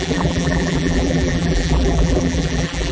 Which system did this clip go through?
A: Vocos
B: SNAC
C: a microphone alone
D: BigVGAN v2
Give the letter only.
D